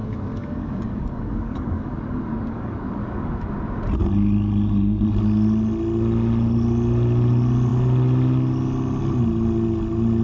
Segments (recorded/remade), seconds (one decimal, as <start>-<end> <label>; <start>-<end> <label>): 0.0-3.5 remade; 3.5-10.2 recorded